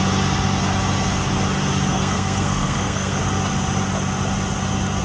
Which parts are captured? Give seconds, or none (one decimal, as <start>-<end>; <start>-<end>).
0.0-1.9; 3.2-5.0